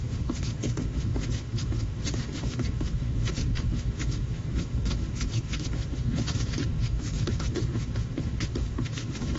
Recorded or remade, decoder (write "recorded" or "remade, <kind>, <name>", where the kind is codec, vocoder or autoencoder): remade, autoencoder, DAC-VAE